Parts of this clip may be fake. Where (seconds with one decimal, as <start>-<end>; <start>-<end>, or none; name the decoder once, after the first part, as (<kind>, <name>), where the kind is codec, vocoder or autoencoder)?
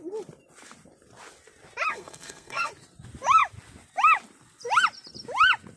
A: 1.9-2.7 (codec, SNAC)